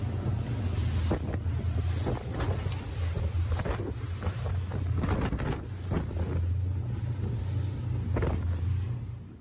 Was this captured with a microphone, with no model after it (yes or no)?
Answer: yes